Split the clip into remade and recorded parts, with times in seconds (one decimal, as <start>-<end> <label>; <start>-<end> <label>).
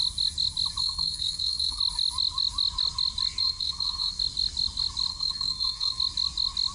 0.0-0.8 recorded; 0.8-1.8 remade; 1.8-3.4 recorded; 3.4-4.2 remade; 4.2-5.1 recorded; 5.1-6.0 remade; 6.0-6.7 recorded